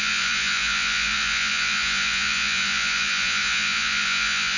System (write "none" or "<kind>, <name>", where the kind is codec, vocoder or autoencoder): vocoder, Vocos